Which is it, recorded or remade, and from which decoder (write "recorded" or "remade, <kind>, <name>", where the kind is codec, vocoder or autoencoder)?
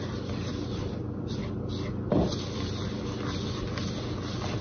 recorded